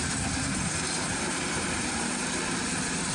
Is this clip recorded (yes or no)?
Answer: no